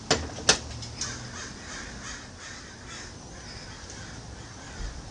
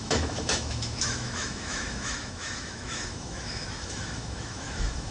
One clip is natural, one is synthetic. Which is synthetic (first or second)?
second